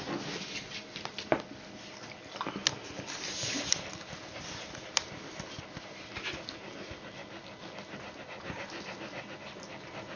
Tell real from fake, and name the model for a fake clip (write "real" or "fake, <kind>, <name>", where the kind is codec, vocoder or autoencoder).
real